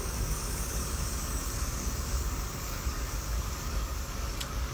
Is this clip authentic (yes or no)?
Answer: no